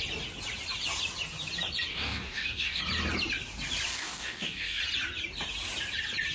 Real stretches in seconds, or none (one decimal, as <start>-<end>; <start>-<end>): 0.0-1.9; 2.8-3.9; 4.8-6.3